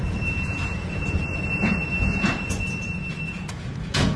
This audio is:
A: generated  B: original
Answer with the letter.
A